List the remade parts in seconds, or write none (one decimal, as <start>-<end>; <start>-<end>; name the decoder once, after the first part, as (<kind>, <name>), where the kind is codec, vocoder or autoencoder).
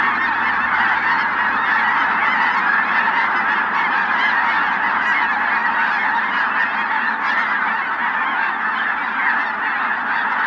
none